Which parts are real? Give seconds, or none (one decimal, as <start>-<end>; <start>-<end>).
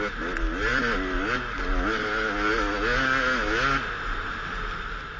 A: 0.0-5.2